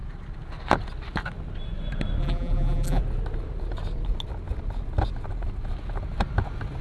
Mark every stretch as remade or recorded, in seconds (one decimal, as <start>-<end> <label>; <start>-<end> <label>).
0.0-2.2 recorded; 2.2-3.0 remade; 3.0-6.8 recorded